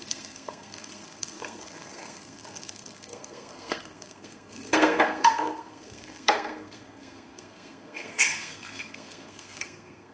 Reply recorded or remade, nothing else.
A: remade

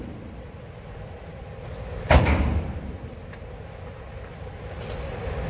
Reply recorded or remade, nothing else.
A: remade